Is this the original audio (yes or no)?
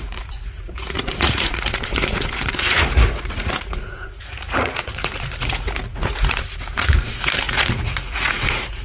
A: no